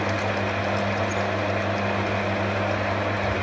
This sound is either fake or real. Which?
real